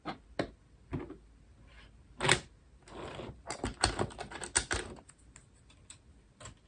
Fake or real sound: real